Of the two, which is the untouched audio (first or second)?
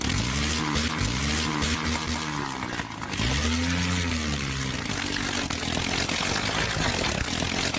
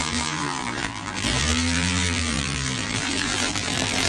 first